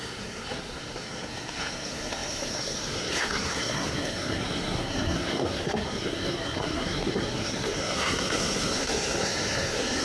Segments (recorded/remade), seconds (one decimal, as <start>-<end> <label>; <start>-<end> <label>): 0.0-10.0 remade